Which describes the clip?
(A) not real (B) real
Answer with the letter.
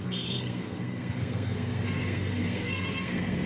A